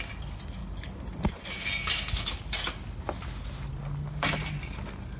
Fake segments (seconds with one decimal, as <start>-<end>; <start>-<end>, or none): none

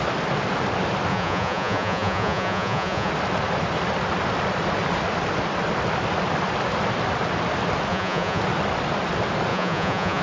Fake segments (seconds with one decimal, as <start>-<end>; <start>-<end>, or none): 1.1-3.1; 7.9-8.4; 9.5-10.2

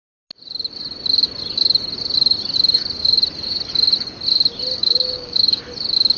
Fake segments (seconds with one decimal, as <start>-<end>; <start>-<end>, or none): 4.8-5.6

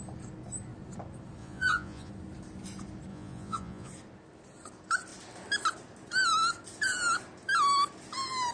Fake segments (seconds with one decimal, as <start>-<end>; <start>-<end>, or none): 1.4-2.1; 3.1-3.9

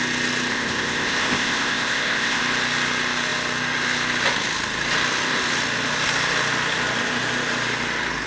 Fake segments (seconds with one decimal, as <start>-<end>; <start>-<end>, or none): 0.5-2.4